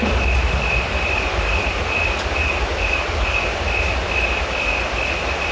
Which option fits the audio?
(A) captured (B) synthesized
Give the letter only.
A